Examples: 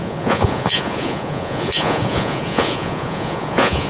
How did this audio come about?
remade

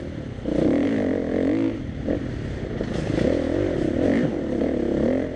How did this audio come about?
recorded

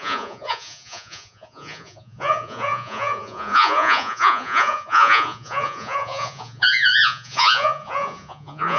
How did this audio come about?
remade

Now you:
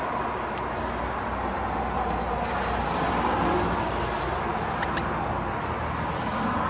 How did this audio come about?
recorded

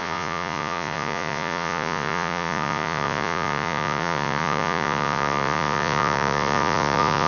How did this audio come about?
remade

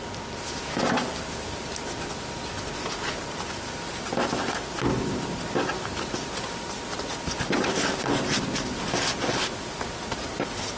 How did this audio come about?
recorded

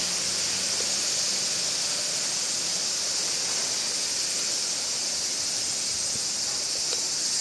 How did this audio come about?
recorded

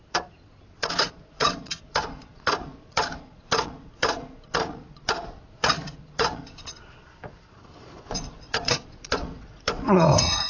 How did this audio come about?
remade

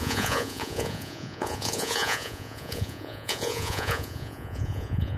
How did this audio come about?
remade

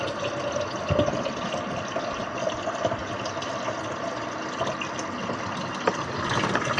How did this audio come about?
recorded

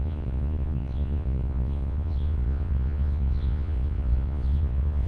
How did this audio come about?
remade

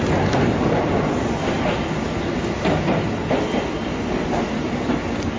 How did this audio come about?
recorded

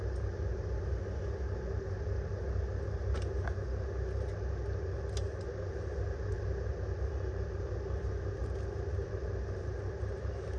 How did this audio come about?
recorded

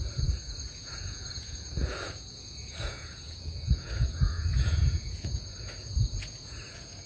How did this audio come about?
remade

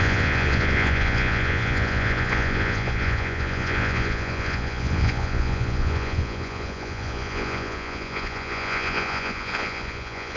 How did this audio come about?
remade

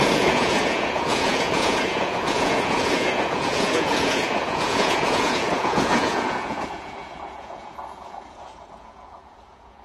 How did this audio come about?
remade